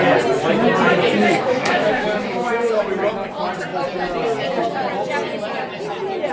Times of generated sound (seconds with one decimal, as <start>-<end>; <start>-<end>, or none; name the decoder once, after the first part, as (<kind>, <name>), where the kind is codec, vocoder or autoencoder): 1.2-2.8 (autoencoder, DAC-VAE)